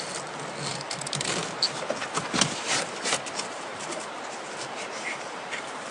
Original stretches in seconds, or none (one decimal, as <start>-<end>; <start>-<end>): 0.0-0.7; 1.3-3.7